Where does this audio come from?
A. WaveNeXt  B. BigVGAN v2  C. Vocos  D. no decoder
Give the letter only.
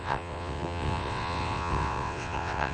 A